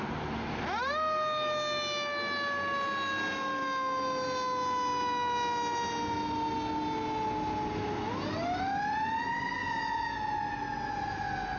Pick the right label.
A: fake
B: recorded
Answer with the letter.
B